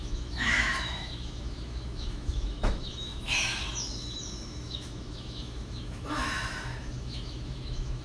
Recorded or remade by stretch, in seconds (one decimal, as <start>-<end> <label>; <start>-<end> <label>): 0.0-8.0 remade